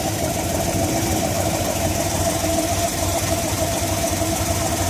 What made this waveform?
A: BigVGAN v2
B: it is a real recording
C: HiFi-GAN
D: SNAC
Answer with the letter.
A